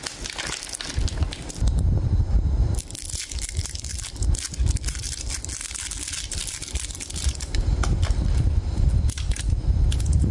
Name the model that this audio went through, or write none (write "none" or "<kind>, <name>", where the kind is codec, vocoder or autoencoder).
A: none